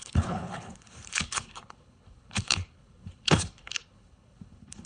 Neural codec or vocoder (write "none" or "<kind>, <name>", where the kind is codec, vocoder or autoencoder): codec, HILCodec